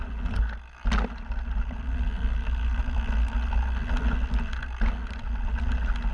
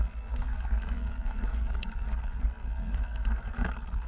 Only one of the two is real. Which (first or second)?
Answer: first